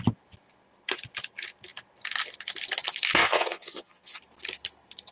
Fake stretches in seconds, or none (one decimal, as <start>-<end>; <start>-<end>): 3.2-4.2